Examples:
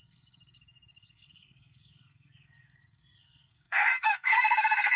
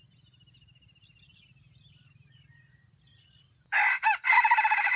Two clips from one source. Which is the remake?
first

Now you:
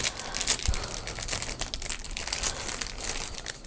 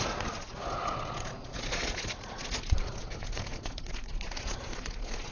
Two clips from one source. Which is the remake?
second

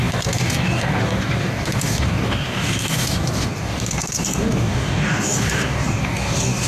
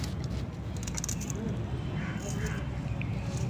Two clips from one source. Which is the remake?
first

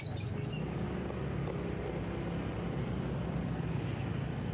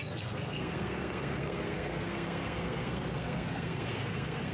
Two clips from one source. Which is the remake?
second